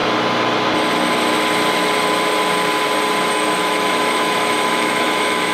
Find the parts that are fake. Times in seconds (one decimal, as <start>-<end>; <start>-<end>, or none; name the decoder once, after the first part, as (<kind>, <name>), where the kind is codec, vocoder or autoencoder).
3.3-5.5 (autoencoder, DAC-VAE)